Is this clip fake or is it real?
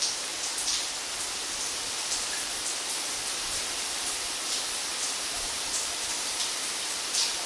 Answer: fake